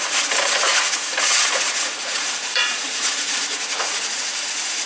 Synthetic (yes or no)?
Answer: yes